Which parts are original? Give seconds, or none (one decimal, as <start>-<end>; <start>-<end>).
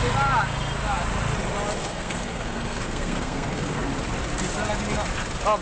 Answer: 0.0-1.8; 3.8-5.6